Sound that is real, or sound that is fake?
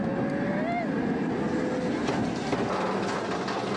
real